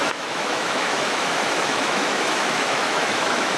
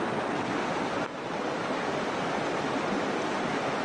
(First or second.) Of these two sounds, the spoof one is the first